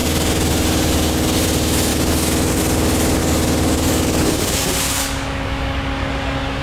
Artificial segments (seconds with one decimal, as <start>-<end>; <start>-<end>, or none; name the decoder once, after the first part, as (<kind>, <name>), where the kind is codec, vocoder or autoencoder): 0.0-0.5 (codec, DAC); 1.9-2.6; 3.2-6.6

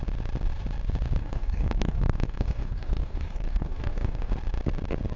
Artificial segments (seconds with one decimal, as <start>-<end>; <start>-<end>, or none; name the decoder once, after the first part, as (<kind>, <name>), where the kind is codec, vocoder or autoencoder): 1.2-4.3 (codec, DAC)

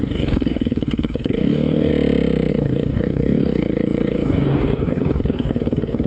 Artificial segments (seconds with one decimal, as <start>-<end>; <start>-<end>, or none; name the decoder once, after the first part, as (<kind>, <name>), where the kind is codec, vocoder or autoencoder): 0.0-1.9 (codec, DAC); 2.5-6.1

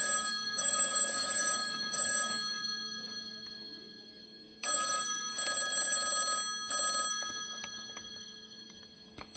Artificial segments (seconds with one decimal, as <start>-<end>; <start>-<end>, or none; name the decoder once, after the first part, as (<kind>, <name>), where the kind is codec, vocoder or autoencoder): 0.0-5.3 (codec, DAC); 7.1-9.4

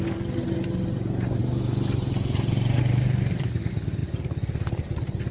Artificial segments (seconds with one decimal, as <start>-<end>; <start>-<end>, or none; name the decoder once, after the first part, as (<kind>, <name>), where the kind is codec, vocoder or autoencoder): none

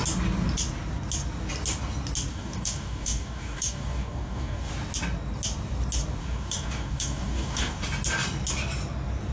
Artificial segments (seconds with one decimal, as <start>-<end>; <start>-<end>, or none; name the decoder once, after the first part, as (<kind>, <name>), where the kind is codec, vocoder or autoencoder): 2.3-4.7 (codec, DAC); 6.2-7.8